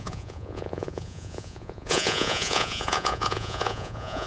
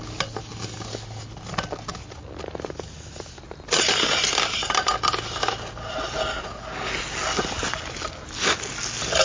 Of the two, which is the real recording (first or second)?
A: second